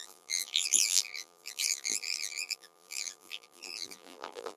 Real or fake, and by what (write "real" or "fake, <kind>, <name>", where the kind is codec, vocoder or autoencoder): fake, vocoder, BigVGAN v2